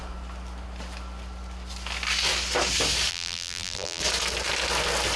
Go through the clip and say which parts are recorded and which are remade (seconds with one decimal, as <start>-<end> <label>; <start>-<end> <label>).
0.0-3.1 recorded; 3.1-4.0 remade; 4.0-5.2 recorded